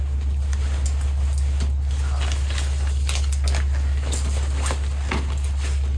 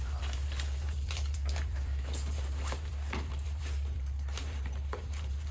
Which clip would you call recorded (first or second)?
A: first